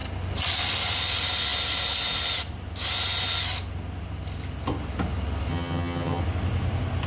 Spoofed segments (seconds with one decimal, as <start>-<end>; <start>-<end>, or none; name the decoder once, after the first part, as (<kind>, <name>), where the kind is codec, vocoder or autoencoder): 5.5-6.2 (vocoder, HiFi-GAN)